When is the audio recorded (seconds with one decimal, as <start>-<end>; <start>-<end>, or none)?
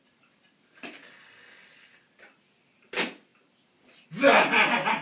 0.0-5.0